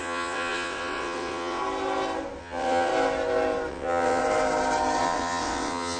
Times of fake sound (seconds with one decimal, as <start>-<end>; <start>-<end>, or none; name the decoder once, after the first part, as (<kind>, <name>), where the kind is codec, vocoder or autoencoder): 0.0-1.6 (vocoder, WaveNeXt); 2.4-2.9; 3.7-4.2; 5.0-6.0